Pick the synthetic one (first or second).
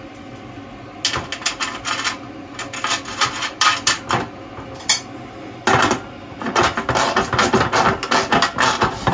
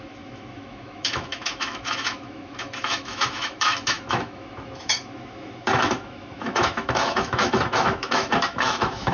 second